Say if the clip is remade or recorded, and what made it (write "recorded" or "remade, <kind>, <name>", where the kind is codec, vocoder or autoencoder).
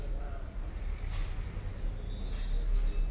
recorded